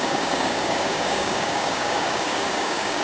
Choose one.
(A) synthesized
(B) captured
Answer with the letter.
A